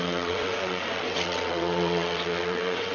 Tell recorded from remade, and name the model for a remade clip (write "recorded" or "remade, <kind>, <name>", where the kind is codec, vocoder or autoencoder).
remade, vocoder, WaveNeXt